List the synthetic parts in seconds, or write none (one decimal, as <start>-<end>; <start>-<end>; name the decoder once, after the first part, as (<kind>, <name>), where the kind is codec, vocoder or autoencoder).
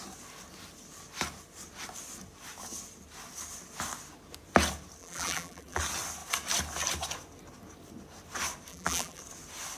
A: 5.0-5.8 (vocoder, BigVGAN v2); 8.7-9.2